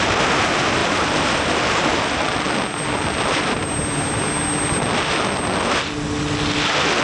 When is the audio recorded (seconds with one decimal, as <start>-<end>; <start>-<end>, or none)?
0.0-7.0